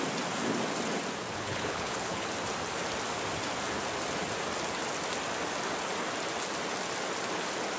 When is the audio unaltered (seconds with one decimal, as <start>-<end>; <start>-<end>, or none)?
0.0-1.3; 2.3-7.8